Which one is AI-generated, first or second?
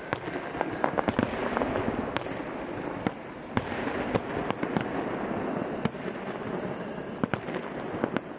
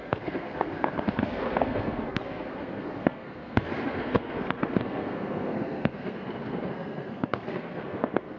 second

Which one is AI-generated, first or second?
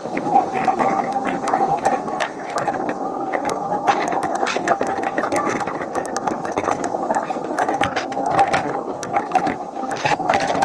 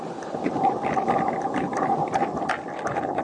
first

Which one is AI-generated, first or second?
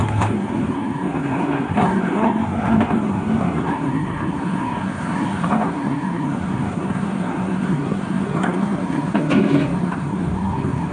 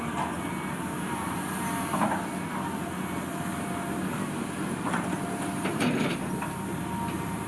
first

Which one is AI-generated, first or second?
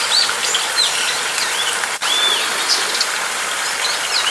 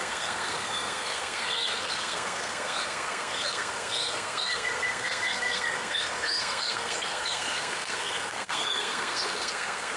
second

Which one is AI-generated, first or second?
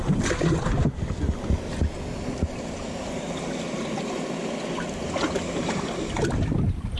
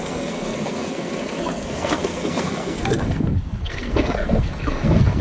second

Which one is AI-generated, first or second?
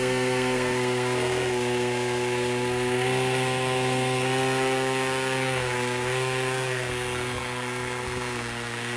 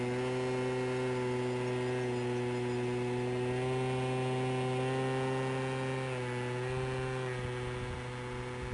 first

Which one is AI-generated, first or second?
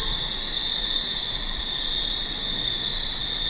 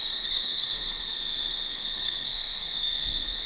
second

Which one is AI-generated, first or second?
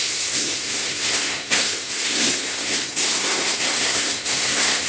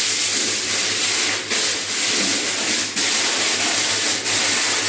first